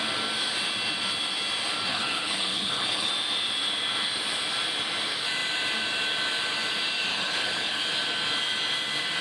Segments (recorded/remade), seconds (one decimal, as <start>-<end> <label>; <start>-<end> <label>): 0.0-1.9 recorded; 1.9-3.1 remade; 3.1-7.1 recorded; 7.1-7.8 remade; 7.8-9.2 recorded